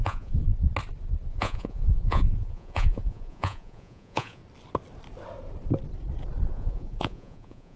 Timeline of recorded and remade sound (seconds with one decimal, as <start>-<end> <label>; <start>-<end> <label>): 0.0-0.5 remade; 0.5-1.3 recorded; 1.3-4.4 remade; 4.4-6.5 recorded; 6.5-7.8 remade